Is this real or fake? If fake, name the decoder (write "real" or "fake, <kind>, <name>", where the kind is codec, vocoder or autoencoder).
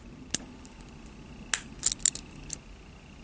real